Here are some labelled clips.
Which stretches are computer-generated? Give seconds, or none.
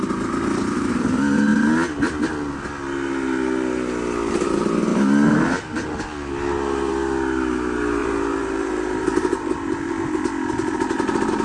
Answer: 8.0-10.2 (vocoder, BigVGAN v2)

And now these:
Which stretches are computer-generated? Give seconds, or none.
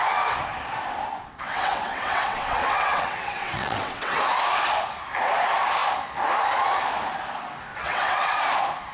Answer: 1.1-4.2 (vocoder, WaveNeXt); 7.7-8.3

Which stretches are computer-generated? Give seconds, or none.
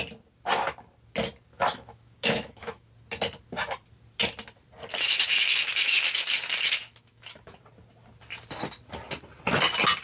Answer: 1.5-2.9 (autoencoder, DAC-VAE); 4.9-7.6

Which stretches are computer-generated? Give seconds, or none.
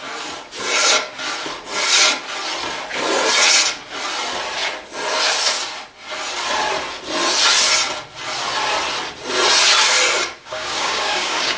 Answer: 10.4-11.6 (codec, DAC)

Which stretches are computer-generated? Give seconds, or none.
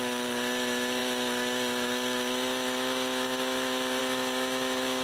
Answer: 0.0-5.0 (autoencoder, DAC-VAE)